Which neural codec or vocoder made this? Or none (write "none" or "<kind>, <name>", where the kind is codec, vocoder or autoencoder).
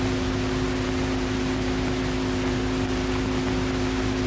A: none